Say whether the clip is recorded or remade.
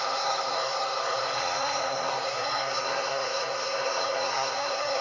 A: remade